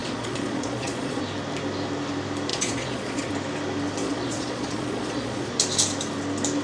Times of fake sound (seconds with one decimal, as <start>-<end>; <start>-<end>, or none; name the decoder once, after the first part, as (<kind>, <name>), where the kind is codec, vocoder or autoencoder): 0.0-1.2 (vocoder, Vocos); 2.5-3.3; 4.0-5.5